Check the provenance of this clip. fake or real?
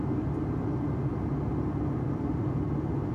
real